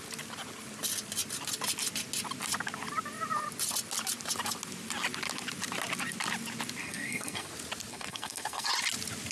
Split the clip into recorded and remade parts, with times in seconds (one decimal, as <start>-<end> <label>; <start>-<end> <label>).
0.0-6.8 recorded; 6.8-7.5 remade; 7.5-7.9 recorded; 7.9-8.7 remade; 8.7-9.3 recorded